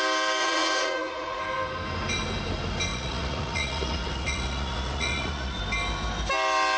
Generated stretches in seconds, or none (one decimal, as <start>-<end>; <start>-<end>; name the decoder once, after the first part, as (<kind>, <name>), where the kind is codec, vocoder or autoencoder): 0.4-1.4 (vocoder, Vocos); 2.9-5.6